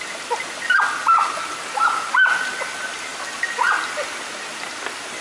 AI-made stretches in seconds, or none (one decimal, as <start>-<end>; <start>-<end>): none